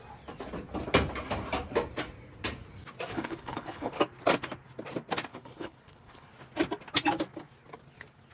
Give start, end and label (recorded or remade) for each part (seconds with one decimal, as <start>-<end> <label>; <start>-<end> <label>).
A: 0.0-3.1 recorded; 3.1-4.0 remade; 4.0-5.3 recorded; 5.3-6.3 remade; 6.3-8.3 recorded